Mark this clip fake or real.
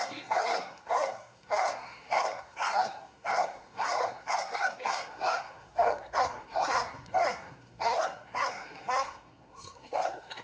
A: fake